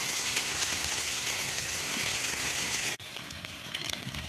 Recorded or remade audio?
remade